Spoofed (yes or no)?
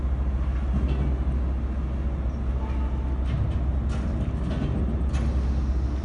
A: no